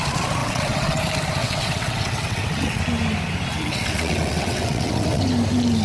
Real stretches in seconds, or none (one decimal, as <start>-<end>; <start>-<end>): 0.0-0.4; 1.0-1.4; 2.8-3.5; 5.2-5.8